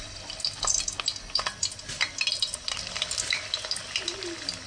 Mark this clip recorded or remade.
recorded